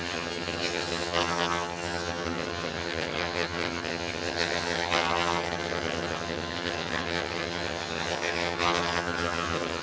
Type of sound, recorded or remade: remade